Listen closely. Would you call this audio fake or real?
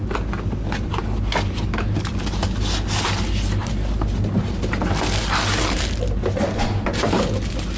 real